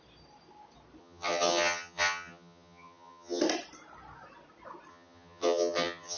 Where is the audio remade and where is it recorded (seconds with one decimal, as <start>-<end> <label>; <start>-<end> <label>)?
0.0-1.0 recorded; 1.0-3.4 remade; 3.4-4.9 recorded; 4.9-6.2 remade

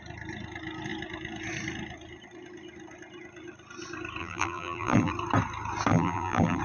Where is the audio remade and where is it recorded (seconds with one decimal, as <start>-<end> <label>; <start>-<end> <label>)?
0.0-4.2 recorded; 4.2-5.1 remade; 5.1-5.9 recorded; 5.9-6.6 remade

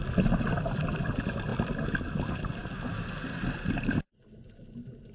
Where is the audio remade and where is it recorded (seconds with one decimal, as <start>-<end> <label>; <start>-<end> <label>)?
0.0-5.1 recorded

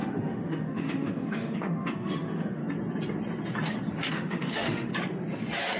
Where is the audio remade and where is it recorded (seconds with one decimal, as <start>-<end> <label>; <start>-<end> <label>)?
0.0-2.6 remade; 2.6-4.1 recorded; 4.1-4.9 remade; 4.9-5.8 recorded

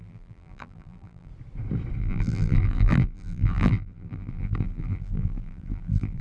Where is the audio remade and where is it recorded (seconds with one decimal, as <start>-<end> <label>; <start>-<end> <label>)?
0.0-1.3 remade; 1.3-2.0 recorded; 2.0-6.2 remade

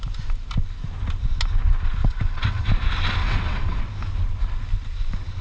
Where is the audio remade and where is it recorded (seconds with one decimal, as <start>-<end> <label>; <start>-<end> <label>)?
0.0-2.0 recorded; 2.0-2.7 remade; 2.7-3.2 recorded; 3.2-3.8 remade; 3.8-5.4 recorded

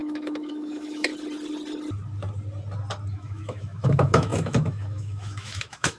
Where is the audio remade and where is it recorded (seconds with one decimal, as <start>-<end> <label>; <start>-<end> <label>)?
0.0-1.1 remade; 1.1-3.1 recorded; 3.1-6.0 remade

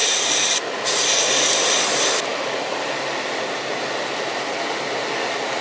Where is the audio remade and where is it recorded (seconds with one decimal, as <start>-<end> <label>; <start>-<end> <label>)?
0.0-0.5 remade; 0.5-5.6 recorded